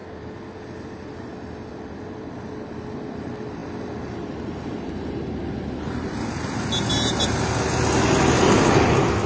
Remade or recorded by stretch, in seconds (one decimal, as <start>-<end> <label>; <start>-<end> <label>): 0.0-9.3 recorded